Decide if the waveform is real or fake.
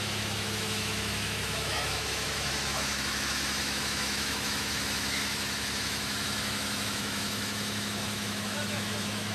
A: fake